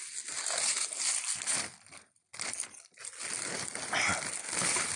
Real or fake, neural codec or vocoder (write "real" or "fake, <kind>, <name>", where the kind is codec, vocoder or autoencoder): real